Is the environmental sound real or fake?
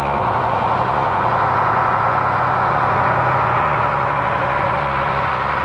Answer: fake